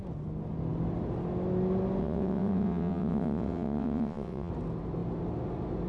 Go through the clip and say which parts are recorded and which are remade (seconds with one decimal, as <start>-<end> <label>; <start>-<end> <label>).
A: 0.0-2.0 recorded; 2.0-4.5 remade; 4.5-5.9 recorded